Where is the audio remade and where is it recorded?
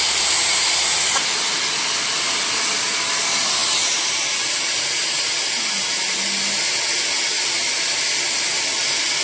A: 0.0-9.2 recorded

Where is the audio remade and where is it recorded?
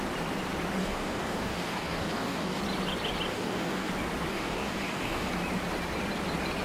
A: 0.0-0.8 recorded; 0.8-2.6 remade; 2.6-3.3 recorded; 3.3-3.9 remade; 3.9-4.3 recorded; 4.3-5.3 remade; 5.3-6.6 recorded